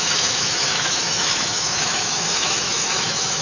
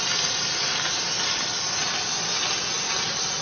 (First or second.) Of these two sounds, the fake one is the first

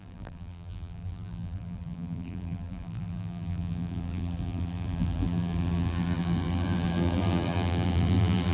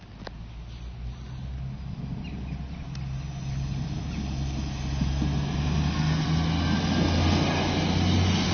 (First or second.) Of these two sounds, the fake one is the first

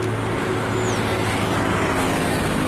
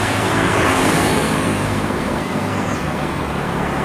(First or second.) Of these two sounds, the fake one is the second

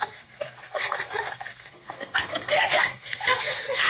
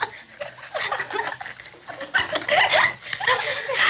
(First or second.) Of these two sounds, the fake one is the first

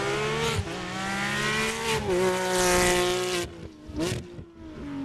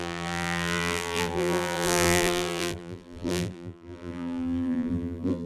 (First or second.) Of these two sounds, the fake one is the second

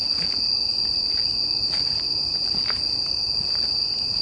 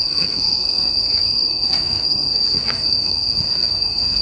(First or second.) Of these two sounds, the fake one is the second